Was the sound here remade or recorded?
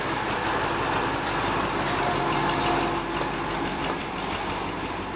recorded